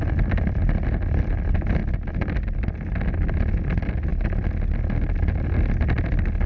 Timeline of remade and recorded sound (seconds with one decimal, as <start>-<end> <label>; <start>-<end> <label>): 0.0-6.5 recorded